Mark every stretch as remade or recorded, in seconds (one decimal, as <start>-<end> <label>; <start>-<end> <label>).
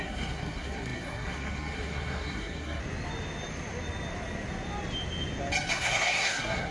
0.0-2.8 remade; 2.8-5.7 recorded; 5.7-6.7 remade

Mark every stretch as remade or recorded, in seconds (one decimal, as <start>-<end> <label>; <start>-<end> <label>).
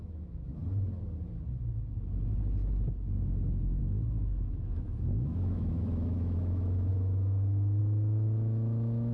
0.0-0.6 remade; 0.6-3.8 recorded; 3.8-9.1 remade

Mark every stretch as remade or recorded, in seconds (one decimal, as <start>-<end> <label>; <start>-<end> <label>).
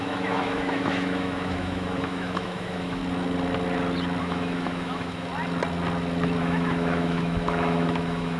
0.0-3.0 remade; 3.0-4.2 recorded; 4.2-5.3 remade; 5.3-6.4 recorded; 6.4-8.4 remade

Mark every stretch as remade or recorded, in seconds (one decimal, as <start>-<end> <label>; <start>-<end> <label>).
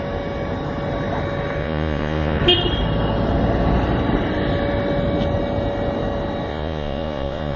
0.0-1.6 recorded; 1.6-2.4 remade; 2.4-6.5 recorded; 6.5-7.6 remade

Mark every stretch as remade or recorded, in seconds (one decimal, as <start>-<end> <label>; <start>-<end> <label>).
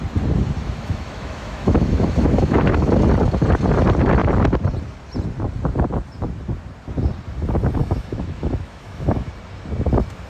0.0-0.6 recorded; 0.6-2.9 remade; 2.9-7.8 recorded; 7.8-9.3 remade; 9.3-10.3 recorded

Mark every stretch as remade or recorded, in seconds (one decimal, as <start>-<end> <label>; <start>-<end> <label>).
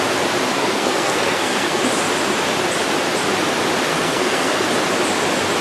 0.0-0.5 recorded; 0.5-1.8 remade; 1.8-3.9 recorded; 3.9-4.7 remade; 4.7-5.6 recorded